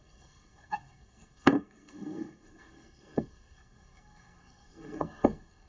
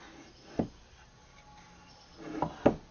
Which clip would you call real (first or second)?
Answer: second